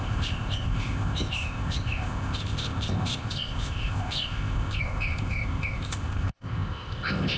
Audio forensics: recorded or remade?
remade